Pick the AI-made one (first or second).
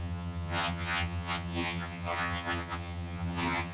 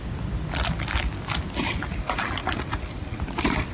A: first